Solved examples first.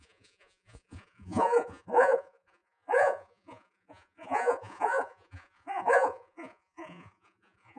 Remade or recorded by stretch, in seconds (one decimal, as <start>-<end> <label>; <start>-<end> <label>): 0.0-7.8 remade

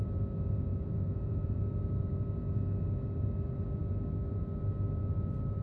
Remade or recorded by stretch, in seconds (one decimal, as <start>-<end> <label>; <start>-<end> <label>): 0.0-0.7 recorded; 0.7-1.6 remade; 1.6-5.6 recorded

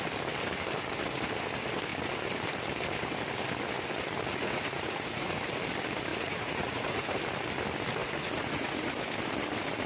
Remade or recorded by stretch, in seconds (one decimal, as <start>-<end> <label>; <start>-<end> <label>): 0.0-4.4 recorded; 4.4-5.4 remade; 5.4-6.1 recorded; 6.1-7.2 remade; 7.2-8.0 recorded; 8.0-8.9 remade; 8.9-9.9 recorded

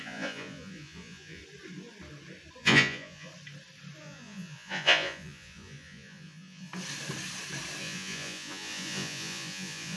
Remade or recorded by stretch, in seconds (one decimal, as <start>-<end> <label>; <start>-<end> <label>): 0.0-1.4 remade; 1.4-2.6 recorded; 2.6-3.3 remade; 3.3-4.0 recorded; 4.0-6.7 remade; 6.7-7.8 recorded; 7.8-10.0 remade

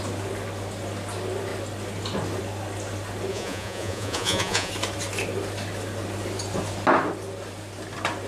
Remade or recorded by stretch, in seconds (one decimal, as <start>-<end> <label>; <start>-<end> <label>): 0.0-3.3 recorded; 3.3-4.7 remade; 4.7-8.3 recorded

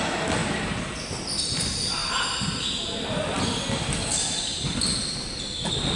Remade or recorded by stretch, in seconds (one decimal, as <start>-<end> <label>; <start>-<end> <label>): 0.0-6.0 recorded